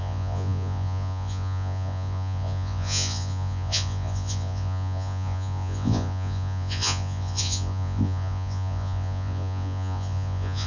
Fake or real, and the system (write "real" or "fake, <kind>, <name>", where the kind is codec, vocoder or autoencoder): fake, vocoder, Vocos